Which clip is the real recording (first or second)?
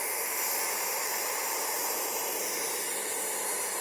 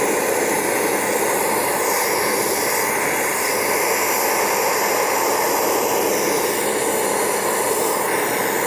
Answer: second